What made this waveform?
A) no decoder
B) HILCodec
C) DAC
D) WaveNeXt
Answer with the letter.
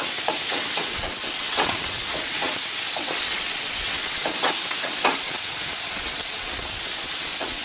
D